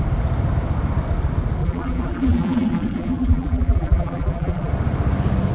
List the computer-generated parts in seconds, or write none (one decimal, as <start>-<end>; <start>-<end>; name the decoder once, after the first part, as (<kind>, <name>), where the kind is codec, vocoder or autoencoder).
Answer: 1.6-4.7 (vocoder, BigVGAN v2)